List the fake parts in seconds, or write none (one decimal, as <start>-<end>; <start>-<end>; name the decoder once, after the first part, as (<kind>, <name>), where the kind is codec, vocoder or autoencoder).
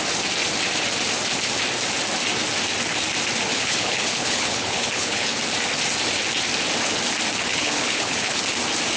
3.5-5.4 (codec, HILCodec); 7.5-8.4